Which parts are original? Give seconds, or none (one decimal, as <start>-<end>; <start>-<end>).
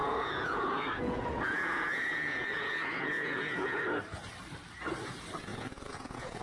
3.8-5.5